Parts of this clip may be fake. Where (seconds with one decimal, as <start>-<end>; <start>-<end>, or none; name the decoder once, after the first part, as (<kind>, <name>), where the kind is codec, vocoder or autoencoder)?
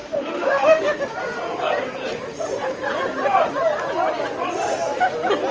0.0-1.0 (autoencoder, DAC-VAE)